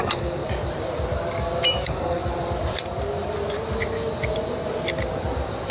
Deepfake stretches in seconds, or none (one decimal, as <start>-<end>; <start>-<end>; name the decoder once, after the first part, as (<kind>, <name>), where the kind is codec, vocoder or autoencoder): 0.0-0.4 (codec, DAC); 1.7-2.2